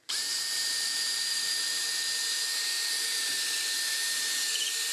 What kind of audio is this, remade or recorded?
remade